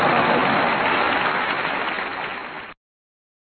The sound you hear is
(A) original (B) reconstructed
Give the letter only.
A